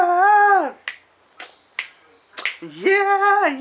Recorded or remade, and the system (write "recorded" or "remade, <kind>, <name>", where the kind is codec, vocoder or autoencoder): recorded